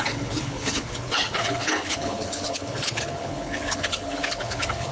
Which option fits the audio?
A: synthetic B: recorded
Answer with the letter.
A